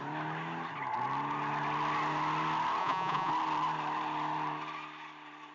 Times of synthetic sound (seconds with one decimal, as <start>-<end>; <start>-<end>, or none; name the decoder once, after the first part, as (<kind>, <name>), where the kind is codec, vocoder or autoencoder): 2.8-3.3 (vocoder, Vocos)